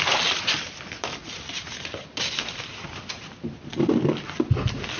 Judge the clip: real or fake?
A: fake